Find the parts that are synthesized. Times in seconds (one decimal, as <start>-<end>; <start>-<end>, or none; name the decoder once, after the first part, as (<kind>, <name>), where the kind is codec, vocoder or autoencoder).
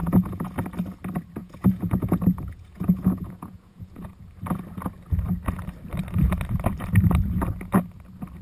0.0-0.5 (vocoder, Vocos); 1.4-4.1